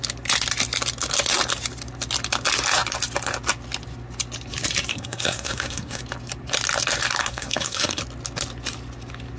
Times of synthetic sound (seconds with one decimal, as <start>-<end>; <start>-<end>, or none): 4.9-6.0; 7.2-8.0